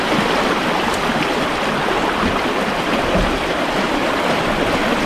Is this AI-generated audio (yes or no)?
no